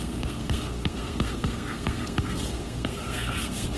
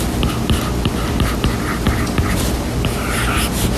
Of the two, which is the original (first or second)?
second